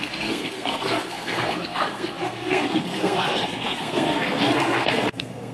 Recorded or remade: remade